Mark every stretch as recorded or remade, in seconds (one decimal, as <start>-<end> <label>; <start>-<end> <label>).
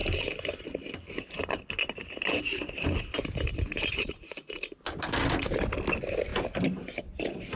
0.0-7.6 recorded